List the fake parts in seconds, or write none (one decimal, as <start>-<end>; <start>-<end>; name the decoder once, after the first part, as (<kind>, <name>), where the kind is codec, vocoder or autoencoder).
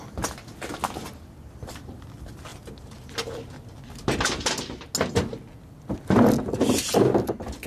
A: none